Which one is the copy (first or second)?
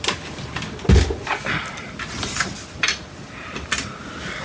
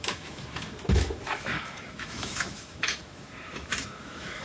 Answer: second